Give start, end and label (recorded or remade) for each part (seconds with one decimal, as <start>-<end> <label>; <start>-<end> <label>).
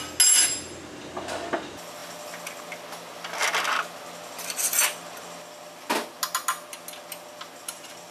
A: 0.0-8.1 recorded